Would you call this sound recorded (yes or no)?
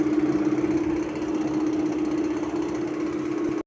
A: yes